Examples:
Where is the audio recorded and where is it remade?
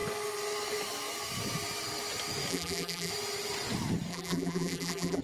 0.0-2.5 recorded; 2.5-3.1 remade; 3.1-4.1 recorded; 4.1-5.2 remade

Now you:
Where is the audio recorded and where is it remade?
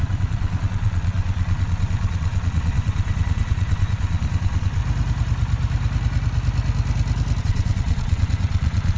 0.0-4.8 remade; 4.8-7.4 recorded; 7.4-9.0 remade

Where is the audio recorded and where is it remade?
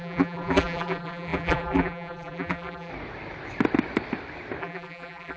0.0-2.9 remade; 2.9-4.6 recorded; 4.6-5.4 remade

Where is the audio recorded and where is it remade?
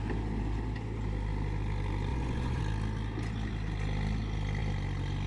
0.0-2.1 recorded; 2.1-2.6 remade; 2.6-5.3 recorded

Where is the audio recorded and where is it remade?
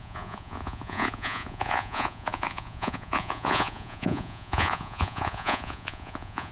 0.0-6.5 remade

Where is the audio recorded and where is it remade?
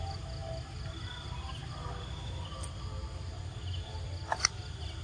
0.0-5.0 recorded